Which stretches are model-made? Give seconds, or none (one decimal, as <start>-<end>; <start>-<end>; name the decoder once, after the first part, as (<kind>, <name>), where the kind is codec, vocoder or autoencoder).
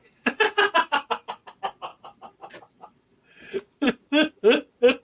0.0-1.5 (vocoder, BigVGAN v2); 1.9-5.0